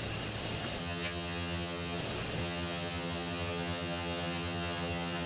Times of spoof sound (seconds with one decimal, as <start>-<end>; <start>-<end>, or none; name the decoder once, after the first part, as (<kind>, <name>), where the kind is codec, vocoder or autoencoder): 0.8-2.0 (vocoder, HiFi-GAN); 2.4-5.3